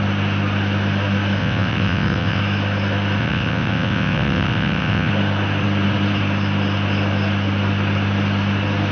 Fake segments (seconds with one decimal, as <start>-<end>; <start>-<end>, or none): 1.4-2.4; 3.2-5.1